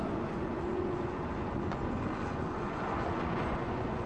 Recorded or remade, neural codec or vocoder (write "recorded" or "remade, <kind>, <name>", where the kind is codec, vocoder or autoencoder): remade, vocoder, Vocos